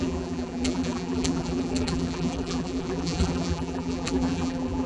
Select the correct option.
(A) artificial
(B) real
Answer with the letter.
A